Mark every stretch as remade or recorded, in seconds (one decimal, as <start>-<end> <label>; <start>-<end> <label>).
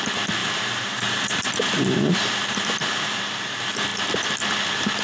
0.0-0.4 recorded; 0.4-3.2 remade; 3.2-5.0 recorded